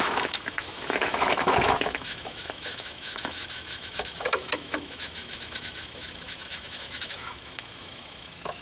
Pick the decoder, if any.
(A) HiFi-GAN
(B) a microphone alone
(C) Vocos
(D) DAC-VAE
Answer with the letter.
D